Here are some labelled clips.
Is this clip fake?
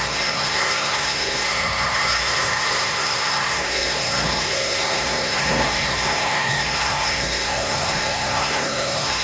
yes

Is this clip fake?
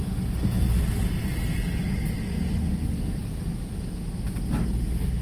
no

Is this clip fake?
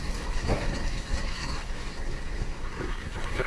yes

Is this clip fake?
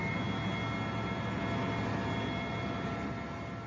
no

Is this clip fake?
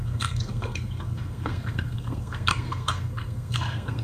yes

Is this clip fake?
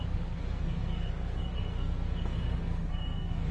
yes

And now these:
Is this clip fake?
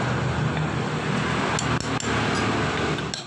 no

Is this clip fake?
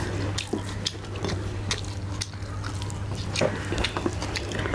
no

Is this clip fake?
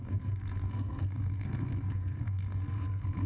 yes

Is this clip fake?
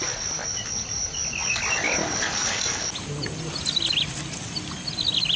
no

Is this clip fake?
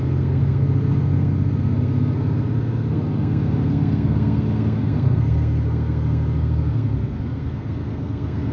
yes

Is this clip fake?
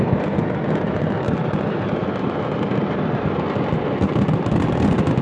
no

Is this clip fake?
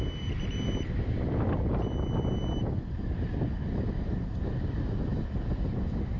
no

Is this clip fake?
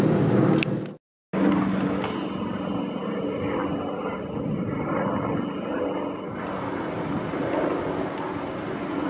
no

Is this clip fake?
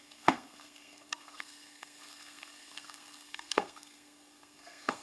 yes